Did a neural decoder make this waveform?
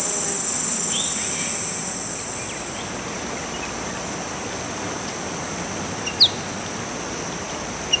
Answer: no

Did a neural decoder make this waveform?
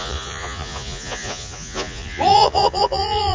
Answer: yes